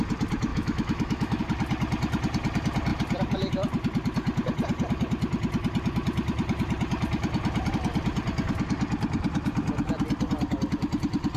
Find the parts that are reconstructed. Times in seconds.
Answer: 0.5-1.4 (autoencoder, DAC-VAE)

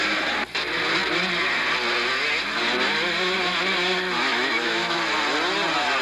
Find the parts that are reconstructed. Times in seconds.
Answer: 4.3-5.0 (autoencoder, DAC-VAE)

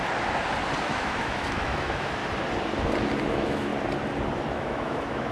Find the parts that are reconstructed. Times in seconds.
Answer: 0.8-2.2 (autoencoder, DAC-VAE); 3.3-3.7; 4.5-5.3

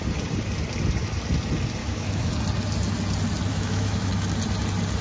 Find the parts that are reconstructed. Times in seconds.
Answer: 1.8-2.3 (autoencoder, DAC-VAE); 3.5-4.1

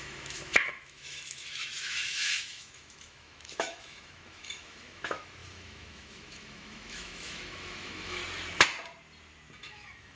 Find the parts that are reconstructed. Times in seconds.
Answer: 0.0-8.2 (autoencoder, DAC-VAE); 9.6-10.2